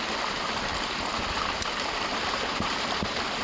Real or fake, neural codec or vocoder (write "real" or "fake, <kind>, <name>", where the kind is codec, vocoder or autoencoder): real